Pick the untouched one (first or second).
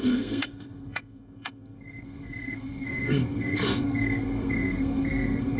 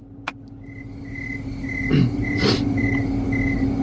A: second